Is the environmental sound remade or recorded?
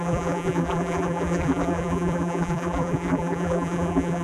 remade